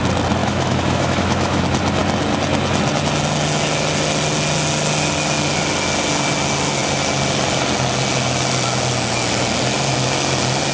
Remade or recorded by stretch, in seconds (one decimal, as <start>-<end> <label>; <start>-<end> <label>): 0.0-0.4 recorded; 0.4-1.6 remade; 1.6-10.7 recorded